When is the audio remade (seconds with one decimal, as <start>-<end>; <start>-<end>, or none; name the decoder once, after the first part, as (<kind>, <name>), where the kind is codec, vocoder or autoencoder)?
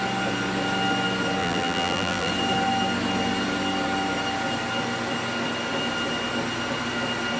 1.4-2.3 (vocoder, BigVGAN v2)